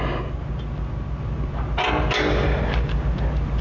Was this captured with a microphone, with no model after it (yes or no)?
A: yes